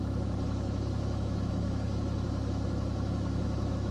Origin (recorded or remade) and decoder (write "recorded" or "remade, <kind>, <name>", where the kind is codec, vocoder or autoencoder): remade, autoencoder, DAC-VAE